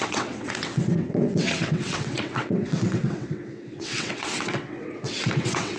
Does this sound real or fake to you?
fake